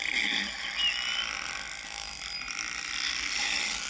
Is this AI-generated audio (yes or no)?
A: no